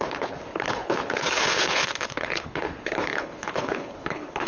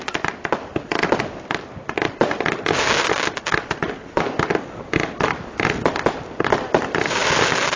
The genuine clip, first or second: second